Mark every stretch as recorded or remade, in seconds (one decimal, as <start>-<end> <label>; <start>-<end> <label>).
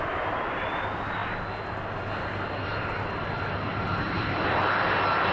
0.0-5.3 recorded